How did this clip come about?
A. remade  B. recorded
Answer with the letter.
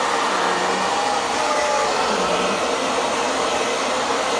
B